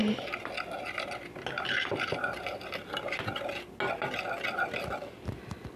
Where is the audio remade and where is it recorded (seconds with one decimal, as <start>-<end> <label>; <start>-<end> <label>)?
0.0-5.8 recorded